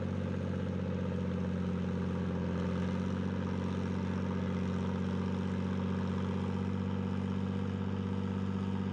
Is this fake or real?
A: real